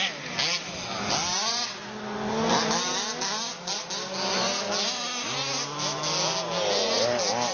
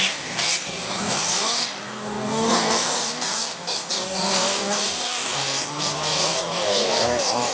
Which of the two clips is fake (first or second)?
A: second